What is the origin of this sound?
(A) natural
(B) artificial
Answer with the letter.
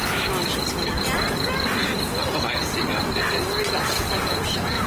A